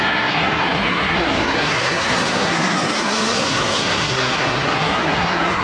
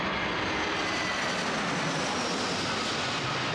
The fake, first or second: first